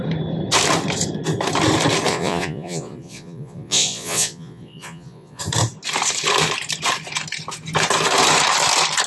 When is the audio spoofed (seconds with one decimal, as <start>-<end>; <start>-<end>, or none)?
2.1-5.4